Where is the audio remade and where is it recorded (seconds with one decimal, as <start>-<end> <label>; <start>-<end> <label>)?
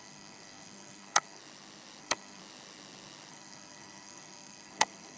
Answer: 0.0-1.4 remade; 1.4-2.0 recorded; 2.0-2.4 remade; 2.4-3.3 recorded; 3.3-5.2 remade